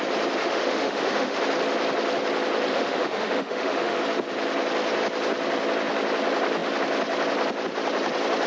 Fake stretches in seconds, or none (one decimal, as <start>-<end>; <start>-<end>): 0.4-1.4; 2.7-4.0